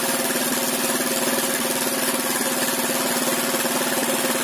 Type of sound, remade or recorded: recorded